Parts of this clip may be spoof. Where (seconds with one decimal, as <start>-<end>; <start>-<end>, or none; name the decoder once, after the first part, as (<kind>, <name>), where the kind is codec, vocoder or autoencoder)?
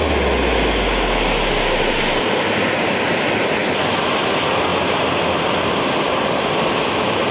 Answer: none